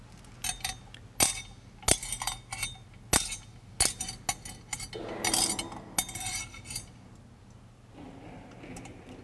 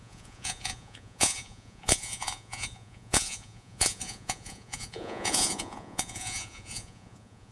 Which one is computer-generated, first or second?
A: second